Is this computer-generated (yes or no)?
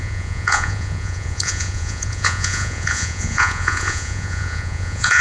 yes